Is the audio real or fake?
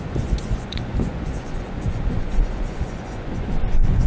fake